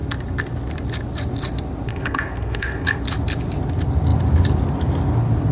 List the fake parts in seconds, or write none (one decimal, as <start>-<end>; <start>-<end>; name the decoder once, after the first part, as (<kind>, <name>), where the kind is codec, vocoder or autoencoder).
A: 1.9-3.0 (codec, SNAC)